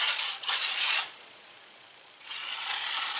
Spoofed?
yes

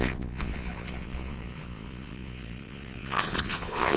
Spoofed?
yes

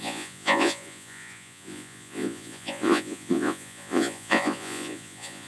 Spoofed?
yes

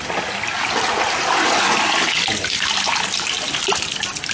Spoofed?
no